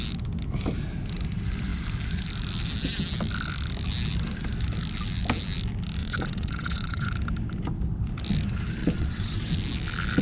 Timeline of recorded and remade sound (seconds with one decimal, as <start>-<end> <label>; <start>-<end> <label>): 0.0-6.0 recorded; 6.0-7.1 remade; 7.1-8.8 recorded; 8.8-9.5 remade; 9.5-10.2 recorded